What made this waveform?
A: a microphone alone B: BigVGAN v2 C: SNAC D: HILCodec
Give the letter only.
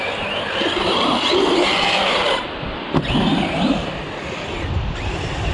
A